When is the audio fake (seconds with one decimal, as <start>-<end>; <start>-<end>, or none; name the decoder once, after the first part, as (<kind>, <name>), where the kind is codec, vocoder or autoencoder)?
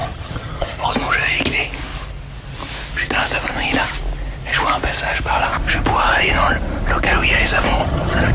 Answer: 0.0-0.9 (vocoder, HiFi-GAN); 7.8-8.3